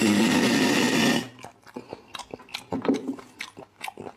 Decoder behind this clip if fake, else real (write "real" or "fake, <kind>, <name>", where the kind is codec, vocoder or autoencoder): real